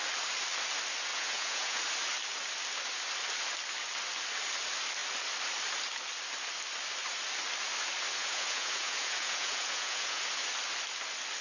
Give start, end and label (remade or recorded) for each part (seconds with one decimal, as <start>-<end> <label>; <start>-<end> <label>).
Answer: 0.0-1.1 recorded; 1.1-1.8 remade; 1.8-8.2 recorded; 8.2-10.2 remade; 10.2-11.4 recorded